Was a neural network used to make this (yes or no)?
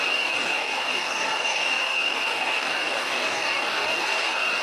yes